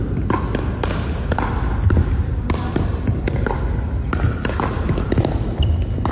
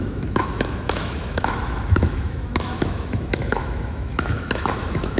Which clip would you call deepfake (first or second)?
second